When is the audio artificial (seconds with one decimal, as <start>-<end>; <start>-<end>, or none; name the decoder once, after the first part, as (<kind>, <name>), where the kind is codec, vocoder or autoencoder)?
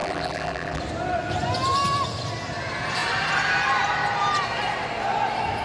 0.0-0.8 (vocoder, BigVGAN v2)